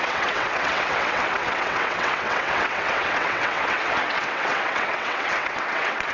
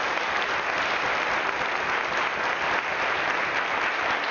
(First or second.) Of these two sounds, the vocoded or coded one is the first